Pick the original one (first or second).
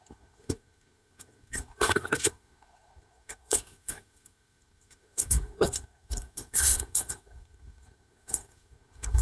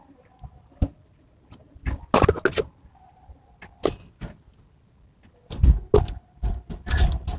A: second